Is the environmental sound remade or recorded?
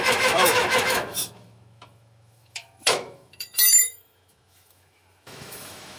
remade